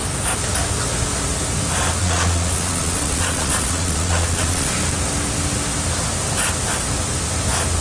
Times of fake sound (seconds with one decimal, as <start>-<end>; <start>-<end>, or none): 2.0-4.7